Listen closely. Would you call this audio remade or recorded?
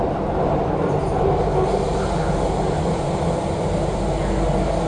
recorded